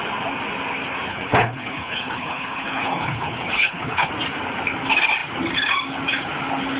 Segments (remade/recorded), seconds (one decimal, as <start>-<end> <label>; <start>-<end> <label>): 0.0-1.1 recorded; 1.1-4.1 remade; 4.1-6.8 recorded